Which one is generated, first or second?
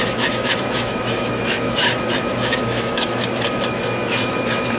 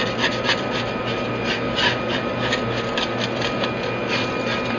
first